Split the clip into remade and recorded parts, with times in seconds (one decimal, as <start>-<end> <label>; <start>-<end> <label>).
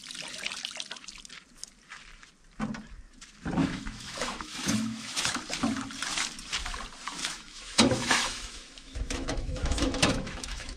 0.0-3.6 recorded; 3.6-5.4 remade; 5.4-7.2 recorded; 7.2-10.8 remade